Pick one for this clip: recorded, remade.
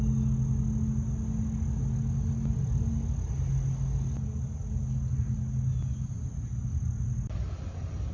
recorded